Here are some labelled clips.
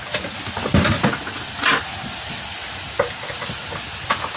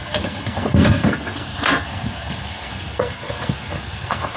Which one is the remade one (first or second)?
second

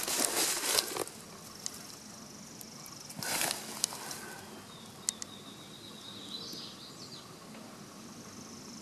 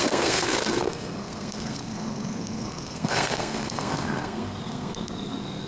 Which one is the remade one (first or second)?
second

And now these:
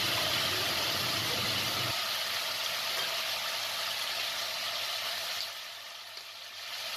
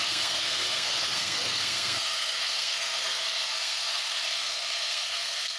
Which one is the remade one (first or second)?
second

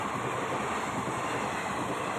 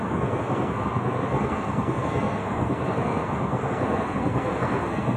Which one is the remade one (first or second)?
second